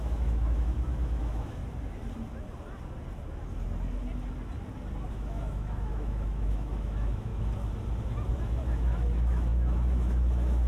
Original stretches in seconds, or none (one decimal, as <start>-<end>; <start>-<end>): 1.6-5.1; 7.3-8.3

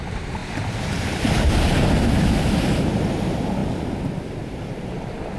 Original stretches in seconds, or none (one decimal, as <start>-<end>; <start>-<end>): 0.0-5.4

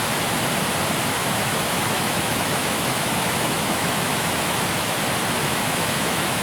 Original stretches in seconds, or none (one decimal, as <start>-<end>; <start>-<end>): 0.0-1.2; 5.0-5.4

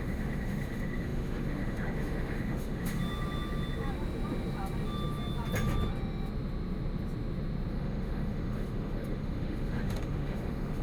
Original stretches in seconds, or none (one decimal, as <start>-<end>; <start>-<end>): 3.0-7.7